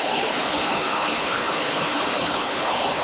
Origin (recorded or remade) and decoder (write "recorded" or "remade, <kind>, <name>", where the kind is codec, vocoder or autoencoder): remade, codec, HILCodec